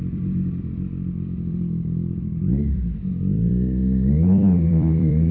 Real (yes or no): no